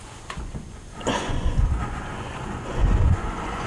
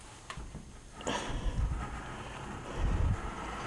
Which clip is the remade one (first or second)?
first